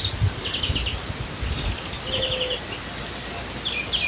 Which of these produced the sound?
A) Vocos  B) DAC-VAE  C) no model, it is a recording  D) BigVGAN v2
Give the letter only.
C